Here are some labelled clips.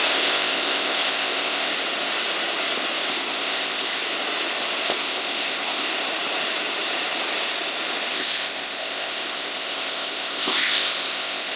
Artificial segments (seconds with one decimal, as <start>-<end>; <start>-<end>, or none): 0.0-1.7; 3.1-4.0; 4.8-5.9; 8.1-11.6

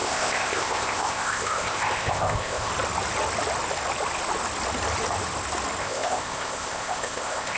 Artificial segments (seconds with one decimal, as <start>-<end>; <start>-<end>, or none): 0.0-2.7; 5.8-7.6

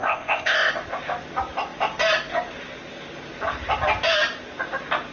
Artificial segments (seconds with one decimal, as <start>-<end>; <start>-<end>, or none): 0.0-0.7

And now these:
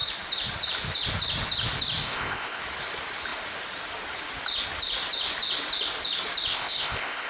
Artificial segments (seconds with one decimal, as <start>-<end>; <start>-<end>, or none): 2.0-2.6; 6.5-7.3